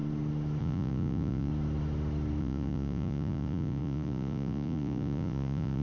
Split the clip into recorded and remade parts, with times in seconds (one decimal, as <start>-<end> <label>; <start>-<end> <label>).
0.0-0.6 recorded; 0.6-1.5 remade; 1.5-2.4 recorded; 2.4-5.8 remade